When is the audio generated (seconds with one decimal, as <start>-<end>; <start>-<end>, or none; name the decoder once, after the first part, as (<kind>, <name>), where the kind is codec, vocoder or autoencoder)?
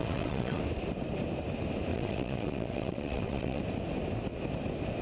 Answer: 0.0-0.6 (vocoder, WaveNeXt); 1.9-3.6